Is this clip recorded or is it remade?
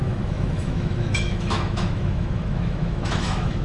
remade